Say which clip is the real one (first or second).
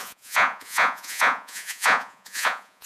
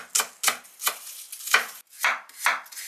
second